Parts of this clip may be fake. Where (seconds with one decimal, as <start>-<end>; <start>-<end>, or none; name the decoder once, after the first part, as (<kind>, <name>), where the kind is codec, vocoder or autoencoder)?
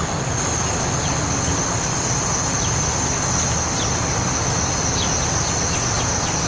none